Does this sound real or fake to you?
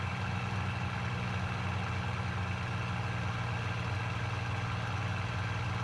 real